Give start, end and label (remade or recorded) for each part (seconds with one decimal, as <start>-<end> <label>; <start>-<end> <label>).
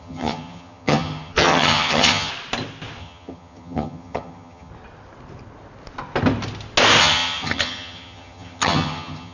0.0-2.3 remade; 2.3-3.0 recorded; 3.0-4.7 remade; 4.7-7.0 recorded; 7.0-9.3 remade